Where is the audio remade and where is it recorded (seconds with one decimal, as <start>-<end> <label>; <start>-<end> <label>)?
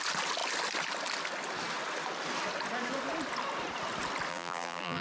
0.0-4.3 recorded; 4.3-5.0 remade